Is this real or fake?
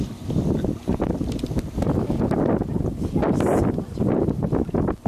real